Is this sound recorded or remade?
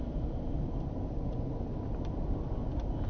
recorded